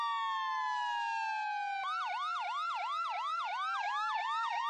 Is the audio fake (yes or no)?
no